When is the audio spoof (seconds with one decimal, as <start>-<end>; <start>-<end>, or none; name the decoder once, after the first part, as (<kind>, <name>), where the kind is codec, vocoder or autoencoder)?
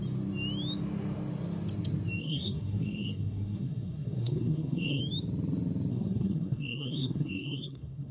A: 2.2-5.0 (codec, SNAC); 5.9-8.1